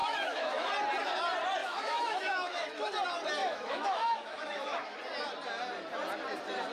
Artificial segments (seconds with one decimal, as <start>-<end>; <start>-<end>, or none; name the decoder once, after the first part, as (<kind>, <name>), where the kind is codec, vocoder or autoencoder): 0.0-0.7 (autoencoder, DAC-VAE); 1.6-2.9; 3.4-5.0